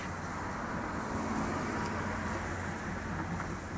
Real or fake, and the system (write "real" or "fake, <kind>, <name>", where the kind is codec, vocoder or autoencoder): real